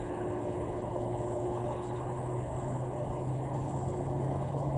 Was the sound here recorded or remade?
remade